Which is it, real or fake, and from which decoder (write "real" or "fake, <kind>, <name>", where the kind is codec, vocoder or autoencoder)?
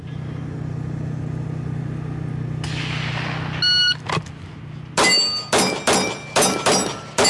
real